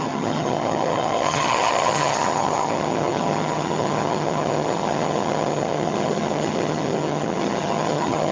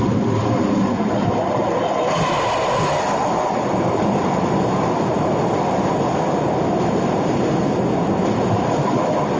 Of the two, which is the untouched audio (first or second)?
second